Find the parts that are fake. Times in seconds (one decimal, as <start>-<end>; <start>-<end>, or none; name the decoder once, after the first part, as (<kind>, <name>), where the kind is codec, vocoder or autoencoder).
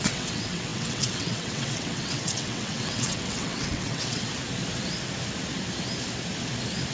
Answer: 0.0-4.3 (vocoder, WaveNeXt)